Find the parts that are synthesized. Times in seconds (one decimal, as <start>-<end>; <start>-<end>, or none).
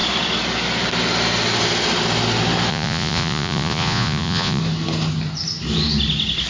2.7-4.6